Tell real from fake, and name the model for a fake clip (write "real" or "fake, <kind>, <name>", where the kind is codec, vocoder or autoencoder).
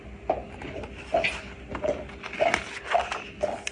real